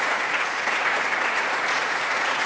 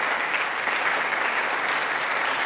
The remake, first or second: first